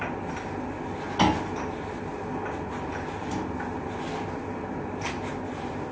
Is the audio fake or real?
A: real